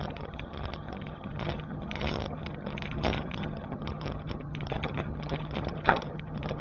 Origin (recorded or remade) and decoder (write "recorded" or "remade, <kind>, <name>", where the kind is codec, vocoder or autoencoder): remade, vocoder, HiFi-GAN